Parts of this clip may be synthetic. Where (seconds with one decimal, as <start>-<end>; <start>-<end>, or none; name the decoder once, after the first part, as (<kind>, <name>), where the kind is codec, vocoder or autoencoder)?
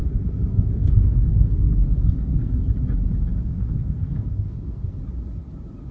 0.0-2.6 (codec, SNAC); 3.4-5.0